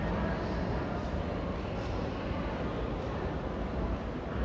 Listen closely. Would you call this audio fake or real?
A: real